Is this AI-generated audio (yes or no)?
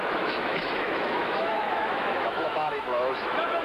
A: yes